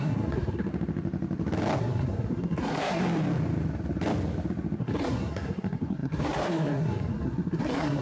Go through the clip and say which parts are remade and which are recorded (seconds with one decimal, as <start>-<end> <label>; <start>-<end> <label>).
0.0-0.7 remade; 0.7-1.8 recorded; 1.8-3.0 remade; 3.0-4.8 recorded; 4.8-8.0 remade